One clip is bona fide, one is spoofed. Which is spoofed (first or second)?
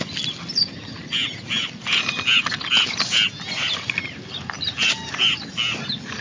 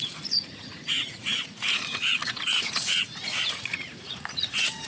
second